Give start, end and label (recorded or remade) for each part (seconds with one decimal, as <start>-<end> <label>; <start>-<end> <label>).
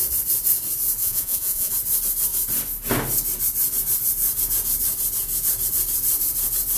0.0-1.0 recorded; 1.0-1.7 remade; 1.7-6.8 recorded